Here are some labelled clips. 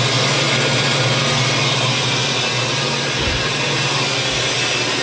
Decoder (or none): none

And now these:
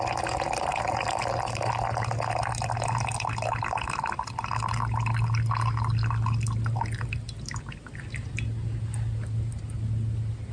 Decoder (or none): none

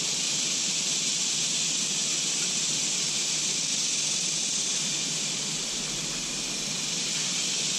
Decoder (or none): none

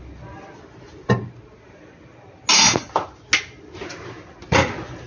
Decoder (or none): none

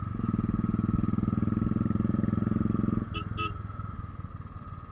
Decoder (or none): none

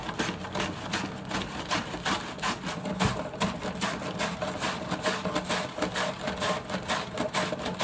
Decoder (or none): none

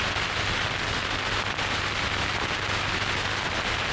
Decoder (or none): none